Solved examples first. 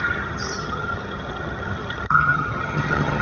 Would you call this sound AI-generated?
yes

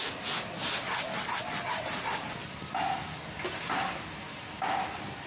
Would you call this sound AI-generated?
no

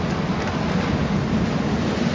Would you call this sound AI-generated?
no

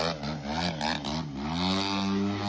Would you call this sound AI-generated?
no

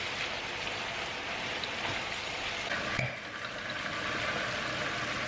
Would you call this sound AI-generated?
no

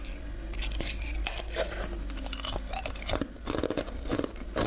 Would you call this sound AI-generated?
no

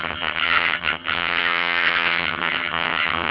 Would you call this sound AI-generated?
yes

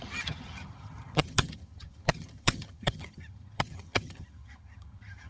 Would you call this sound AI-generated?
yes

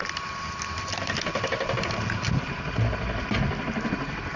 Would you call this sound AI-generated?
no